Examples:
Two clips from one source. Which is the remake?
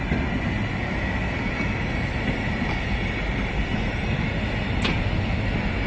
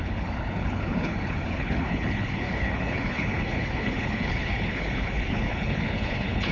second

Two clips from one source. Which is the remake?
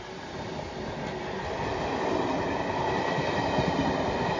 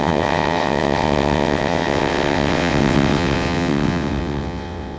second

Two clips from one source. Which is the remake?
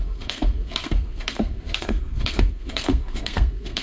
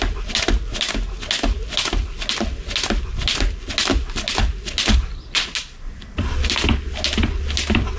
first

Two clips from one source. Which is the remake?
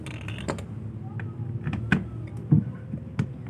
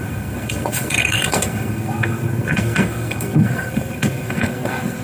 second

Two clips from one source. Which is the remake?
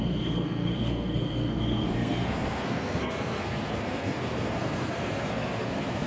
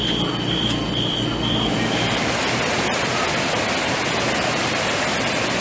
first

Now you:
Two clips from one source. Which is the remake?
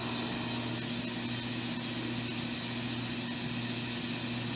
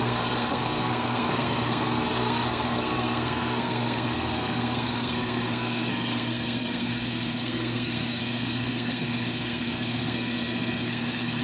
second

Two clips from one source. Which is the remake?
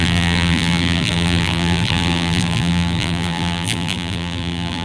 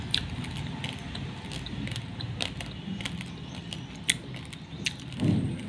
first